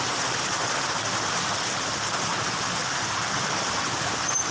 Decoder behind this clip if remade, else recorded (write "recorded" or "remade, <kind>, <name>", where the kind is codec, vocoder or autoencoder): recorded